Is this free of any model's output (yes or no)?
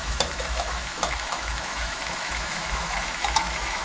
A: no